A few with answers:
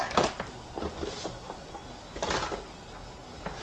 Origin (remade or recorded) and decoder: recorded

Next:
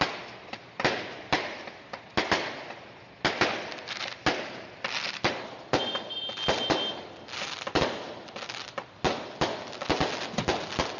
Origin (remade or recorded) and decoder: recorded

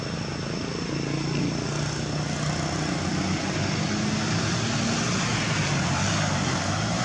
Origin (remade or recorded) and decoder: recorded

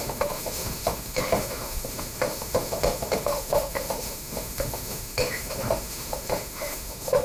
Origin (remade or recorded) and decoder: remade, autoencoder, DAC-VAE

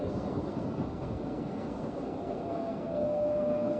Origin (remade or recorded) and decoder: remade, codec, SNAC